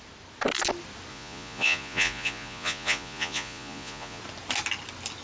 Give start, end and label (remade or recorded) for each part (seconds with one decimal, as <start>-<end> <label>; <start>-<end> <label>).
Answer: 0.0-1.1 recorded; 1.1-4.2 remade; 4.2-5.2 recorded